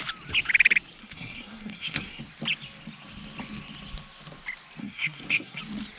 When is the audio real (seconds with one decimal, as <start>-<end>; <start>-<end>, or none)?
0.0-1.0; 2.2-4.8; 5.6-6.0